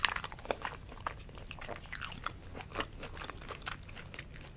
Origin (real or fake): real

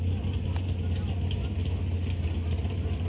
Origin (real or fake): real